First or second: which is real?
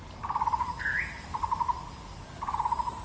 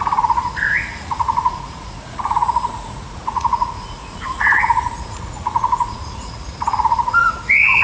first